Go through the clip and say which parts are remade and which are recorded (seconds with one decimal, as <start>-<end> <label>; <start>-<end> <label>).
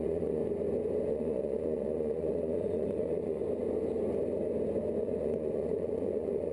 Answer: 0.0-0.4 remade; 0.4-1.1 recorded; 1.1-3.4 remade; 3.4-5.0 recorded; 5.0-6.5 remade